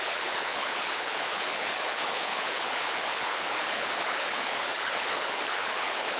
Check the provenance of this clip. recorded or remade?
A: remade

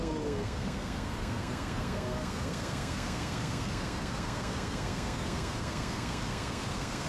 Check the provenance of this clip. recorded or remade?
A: remade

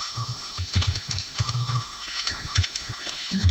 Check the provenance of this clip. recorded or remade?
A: remade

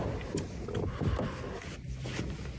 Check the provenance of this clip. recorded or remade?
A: recorded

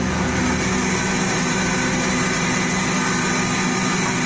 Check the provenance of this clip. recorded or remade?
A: recorded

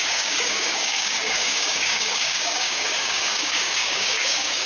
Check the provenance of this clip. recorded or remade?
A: remade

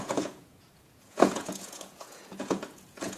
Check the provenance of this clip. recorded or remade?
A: remade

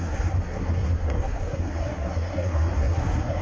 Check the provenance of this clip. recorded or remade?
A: remade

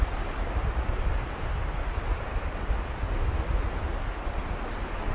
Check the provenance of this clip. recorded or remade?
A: recorded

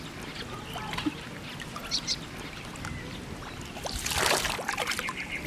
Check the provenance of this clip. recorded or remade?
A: recorded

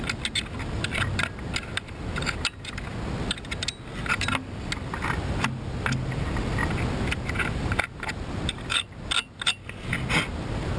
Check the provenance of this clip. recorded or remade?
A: recorded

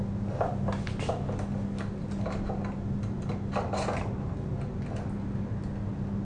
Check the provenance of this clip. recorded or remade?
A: recorded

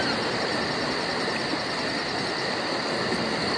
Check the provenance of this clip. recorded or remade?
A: recorded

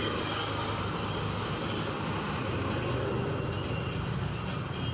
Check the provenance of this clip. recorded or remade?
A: recorded